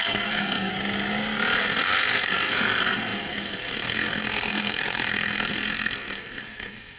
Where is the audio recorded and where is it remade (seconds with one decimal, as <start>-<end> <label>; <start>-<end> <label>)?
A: 0.0-0.7 remade; 0.7-1.6 recorded; 1.6-7.0 remade